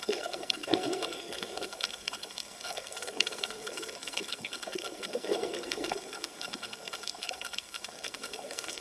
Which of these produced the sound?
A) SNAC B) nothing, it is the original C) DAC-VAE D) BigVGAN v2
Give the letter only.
A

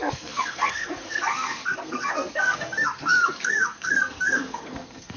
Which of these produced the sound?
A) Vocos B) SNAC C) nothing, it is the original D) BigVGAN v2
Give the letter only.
B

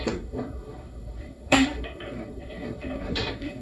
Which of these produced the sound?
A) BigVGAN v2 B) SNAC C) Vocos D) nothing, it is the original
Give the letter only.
B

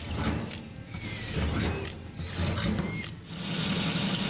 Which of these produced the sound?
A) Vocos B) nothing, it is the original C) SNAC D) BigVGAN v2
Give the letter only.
B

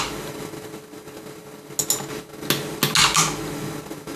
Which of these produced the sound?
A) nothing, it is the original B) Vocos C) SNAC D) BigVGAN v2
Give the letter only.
A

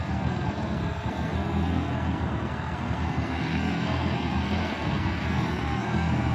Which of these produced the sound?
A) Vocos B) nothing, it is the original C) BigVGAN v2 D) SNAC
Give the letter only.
D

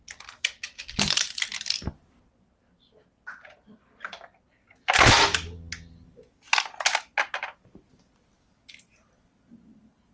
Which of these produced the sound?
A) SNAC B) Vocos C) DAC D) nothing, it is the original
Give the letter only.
D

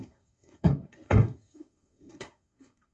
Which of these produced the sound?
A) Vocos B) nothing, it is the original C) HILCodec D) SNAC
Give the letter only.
D